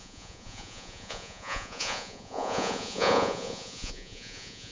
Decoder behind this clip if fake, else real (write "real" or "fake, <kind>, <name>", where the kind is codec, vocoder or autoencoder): fake, vocoder, Vocos